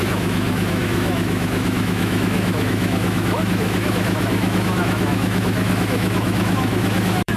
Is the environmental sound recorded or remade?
remade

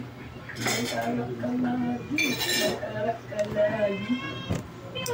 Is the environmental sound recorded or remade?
recorded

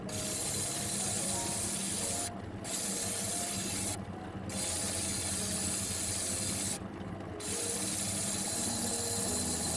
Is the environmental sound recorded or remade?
recorded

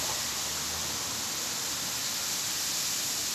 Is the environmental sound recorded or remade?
recorded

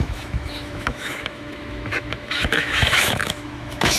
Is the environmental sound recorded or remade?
remade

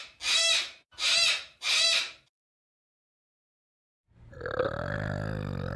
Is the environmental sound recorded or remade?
recorded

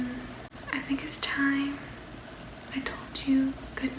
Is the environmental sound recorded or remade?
recorded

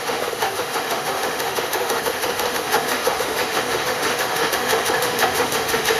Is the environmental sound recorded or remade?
remade